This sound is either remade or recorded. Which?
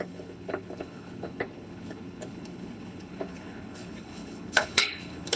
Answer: remade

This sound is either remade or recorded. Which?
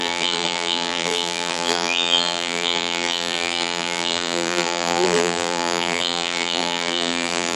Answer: remade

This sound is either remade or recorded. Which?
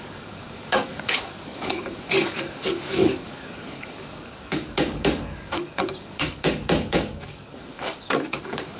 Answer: remade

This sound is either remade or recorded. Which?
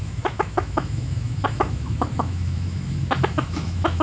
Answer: remade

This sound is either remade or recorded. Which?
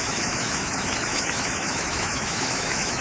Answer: remade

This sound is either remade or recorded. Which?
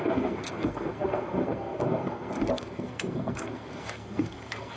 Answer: remade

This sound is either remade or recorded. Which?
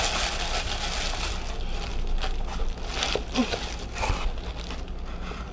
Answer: recorded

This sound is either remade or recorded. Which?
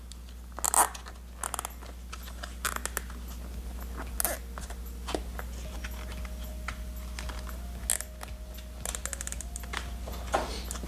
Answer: recorded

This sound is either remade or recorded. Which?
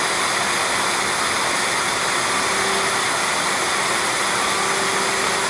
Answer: recorded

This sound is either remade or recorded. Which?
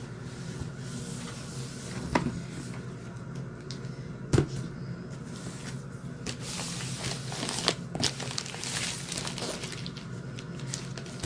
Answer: recorded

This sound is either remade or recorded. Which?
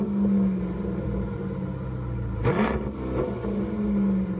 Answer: recorded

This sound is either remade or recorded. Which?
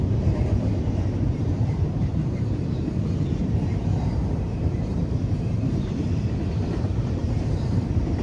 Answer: remade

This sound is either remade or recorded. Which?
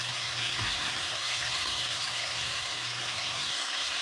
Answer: remade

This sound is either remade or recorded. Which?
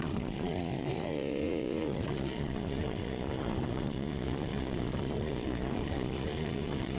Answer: remade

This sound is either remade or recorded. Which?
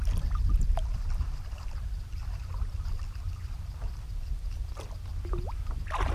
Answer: recorded